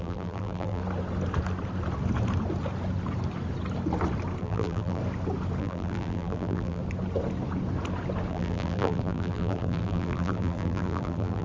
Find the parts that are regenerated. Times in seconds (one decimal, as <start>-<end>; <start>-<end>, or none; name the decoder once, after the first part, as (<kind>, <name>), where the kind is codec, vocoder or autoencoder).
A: 0.0-0.8 (vocoder, BigVGAN v2); 4.4-5.0; 5.6-6.8; 8.3-11.4